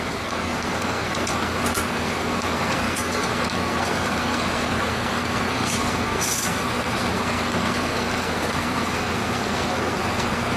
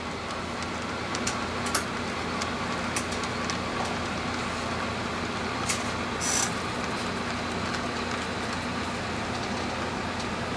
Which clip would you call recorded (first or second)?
second